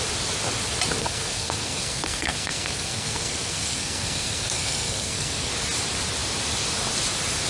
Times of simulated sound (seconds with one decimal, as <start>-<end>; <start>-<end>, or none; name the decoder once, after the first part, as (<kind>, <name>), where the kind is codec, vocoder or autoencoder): 1.0-5.5 (codec, SNAC)